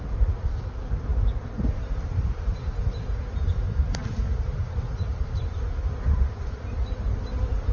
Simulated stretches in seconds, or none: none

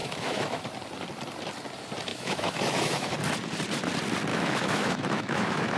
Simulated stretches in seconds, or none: 0.0-0.6 (autoencoder, DAC-VAE); 2.1-3.1; 4.3-5.8

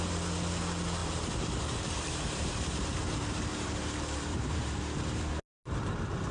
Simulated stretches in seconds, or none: 1.0-4.8 (vocoder, BigVGAN v2)